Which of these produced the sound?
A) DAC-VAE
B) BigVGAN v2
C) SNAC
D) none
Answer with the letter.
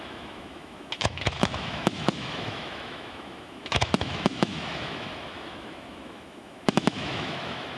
A